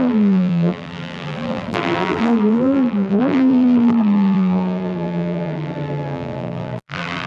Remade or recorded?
remade